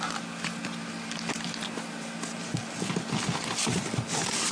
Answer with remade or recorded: recorded